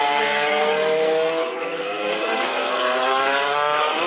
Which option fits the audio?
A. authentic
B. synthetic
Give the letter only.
B